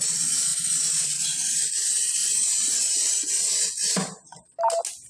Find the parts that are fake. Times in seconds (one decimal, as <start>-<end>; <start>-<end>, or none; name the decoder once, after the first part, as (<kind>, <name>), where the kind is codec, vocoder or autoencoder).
none